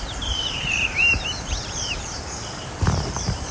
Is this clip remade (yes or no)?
yes